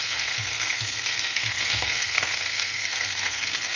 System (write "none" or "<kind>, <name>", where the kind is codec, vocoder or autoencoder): codec, SNAC